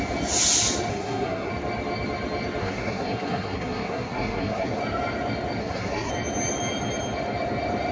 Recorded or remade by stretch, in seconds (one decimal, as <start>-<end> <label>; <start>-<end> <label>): 0.0-0.9 recorded; 0.9-1.5 remade; 1.5-2.6 recorded; 2.6-4.8 remade; 4.8-5.6 recorded; 5.6-6.1 remade; 6.1-7.9 recorded